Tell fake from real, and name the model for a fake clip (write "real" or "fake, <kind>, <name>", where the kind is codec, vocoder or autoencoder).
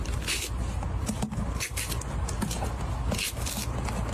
real